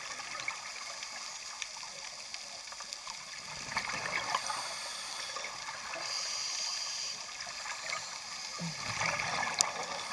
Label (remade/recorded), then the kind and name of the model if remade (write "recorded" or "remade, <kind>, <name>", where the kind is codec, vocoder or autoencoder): recorded